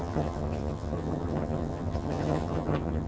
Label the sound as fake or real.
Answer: fake